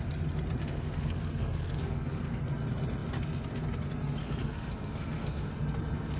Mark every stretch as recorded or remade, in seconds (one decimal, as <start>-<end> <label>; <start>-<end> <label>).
0.0-0.6 recorded; 0.6-2.4 remade; 2.4-4.2 recorded; 4.2-5.5 remade; 5.5-6.2 recorded